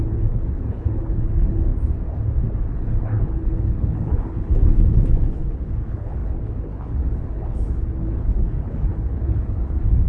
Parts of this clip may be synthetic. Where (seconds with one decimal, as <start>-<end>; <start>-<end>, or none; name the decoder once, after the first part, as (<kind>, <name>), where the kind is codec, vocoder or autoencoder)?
0.0-1.7 (codec, HILCodec); 2.7-10.1